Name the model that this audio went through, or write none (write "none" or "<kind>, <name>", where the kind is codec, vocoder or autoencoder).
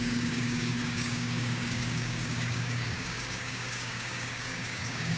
codec, DAC